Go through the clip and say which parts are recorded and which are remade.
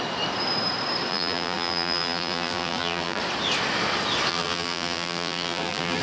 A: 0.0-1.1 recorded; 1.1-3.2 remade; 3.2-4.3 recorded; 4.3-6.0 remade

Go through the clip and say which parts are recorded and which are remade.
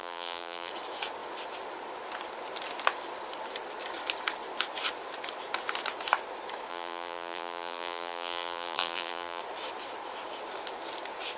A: 0.0-0.7 remade; 0.7-6.7 recorded; 6.7-9.4 remade; 9.4-11.4 recorded